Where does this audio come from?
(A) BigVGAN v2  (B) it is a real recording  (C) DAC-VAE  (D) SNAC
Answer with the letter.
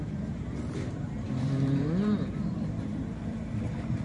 A